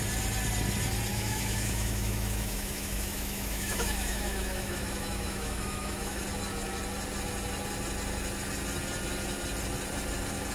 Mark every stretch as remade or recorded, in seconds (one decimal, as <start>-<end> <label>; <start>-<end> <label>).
0.0-1.1 recorded; 1.1-6.2 remade; 6.2-10.5 recorded